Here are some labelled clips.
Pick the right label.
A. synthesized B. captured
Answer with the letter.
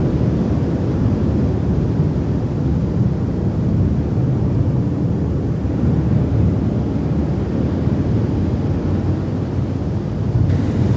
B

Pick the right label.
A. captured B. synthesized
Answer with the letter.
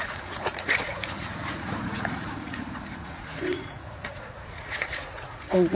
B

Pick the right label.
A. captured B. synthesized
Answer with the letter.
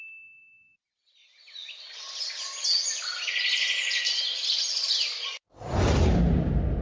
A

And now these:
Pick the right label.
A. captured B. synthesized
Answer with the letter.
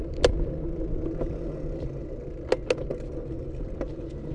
A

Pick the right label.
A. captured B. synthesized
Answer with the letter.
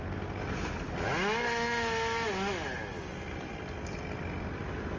A